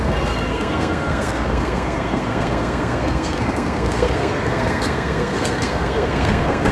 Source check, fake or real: fake